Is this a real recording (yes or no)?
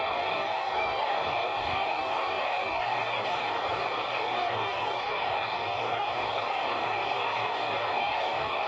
no